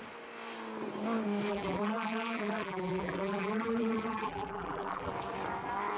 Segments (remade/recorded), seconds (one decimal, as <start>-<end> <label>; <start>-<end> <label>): 0.0-1.5 recorded; 1.5-5.1 remade; 5.1-6.0 recorded